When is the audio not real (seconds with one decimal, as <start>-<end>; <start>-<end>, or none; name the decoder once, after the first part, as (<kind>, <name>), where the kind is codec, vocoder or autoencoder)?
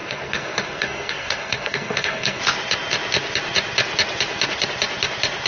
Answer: 0.0-2.4 (codec, SNAC)